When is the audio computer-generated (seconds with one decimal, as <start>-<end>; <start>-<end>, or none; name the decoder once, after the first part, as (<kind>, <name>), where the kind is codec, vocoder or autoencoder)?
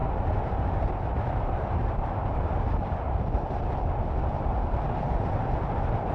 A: 0.0-3.7 (vocoder, BigVGAN v2)